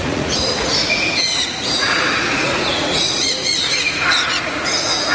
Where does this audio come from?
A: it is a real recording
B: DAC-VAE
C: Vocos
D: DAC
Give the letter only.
C